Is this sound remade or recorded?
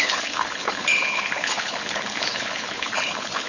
remade